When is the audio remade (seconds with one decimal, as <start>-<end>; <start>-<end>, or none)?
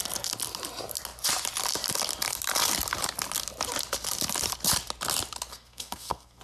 5.5-6.4